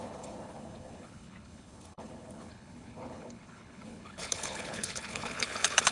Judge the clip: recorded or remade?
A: remade